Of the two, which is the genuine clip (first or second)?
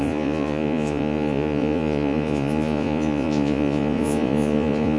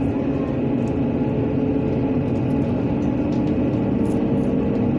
second